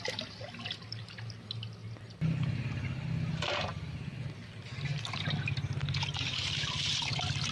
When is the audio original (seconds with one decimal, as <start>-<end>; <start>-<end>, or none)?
3.7-6.8